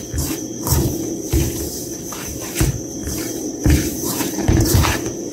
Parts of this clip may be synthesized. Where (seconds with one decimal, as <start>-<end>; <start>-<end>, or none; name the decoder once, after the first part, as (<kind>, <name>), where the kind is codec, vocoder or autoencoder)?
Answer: 0.0-5.3 (vocoder, BigVGAN v2)